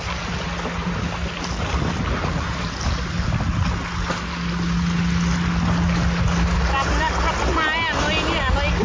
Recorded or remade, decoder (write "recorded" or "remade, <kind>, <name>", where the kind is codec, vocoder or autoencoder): recorded